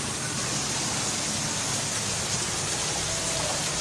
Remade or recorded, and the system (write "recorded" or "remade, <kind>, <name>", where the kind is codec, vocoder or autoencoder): recorded